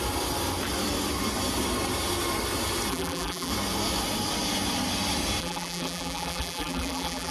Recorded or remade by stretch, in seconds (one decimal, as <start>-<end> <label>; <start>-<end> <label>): 0.0-2.9 recorded; 2.9-3.5 remade; 3.5-5.4 recorded; 5.4-7.3 remade